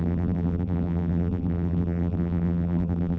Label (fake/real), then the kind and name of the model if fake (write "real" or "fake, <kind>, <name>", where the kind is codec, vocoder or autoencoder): fake, vocoder, BigVGAN v2